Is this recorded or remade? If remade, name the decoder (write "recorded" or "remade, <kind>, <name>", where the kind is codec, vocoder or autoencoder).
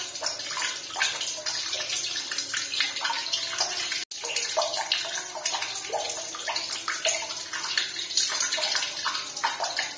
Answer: recorded